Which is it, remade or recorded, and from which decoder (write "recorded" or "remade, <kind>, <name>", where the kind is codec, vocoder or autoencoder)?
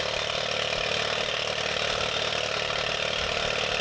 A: recorded